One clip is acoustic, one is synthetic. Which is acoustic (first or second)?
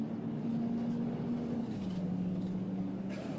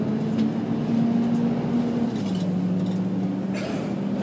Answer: second